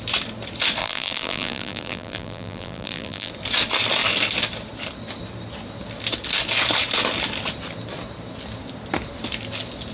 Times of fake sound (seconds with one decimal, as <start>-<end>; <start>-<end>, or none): 0.8-3.3